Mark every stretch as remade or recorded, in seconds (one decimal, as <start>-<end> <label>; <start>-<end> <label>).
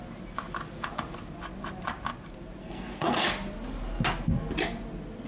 0.0-2.6 recorded; 2.6-3.3 remade; 3.3-5.3 recorded